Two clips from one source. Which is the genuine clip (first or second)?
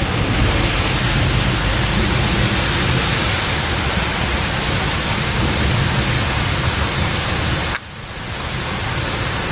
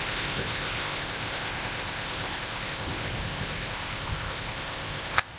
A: first